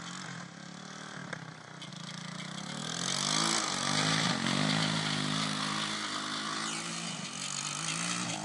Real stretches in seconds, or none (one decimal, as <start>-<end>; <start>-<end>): 0.0-8.4